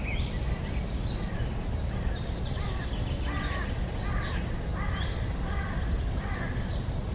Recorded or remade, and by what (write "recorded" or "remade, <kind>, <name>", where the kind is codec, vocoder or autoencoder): recorded